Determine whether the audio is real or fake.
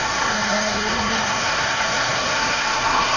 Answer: fake